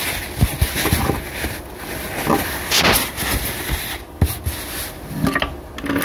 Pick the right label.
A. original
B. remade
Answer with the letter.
A